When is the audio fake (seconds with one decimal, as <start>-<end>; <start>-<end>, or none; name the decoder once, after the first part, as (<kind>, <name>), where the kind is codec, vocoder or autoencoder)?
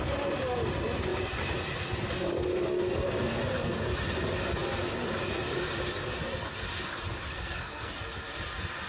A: 7.3-7.9 (codec, SNAC)